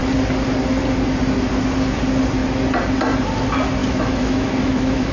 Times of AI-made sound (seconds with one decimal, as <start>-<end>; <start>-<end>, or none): 3.8-5.1